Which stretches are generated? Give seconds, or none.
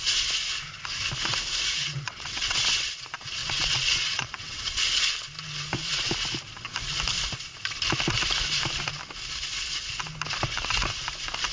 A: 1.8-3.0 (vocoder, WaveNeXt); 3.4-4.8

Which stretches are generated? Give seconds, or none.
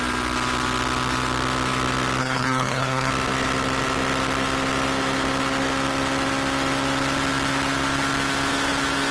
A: 2.2-3.1 (codec, SNAC)